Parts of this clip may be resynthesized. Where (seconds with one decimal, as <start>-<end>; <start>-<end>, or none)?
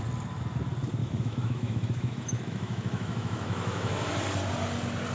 1.0-4.1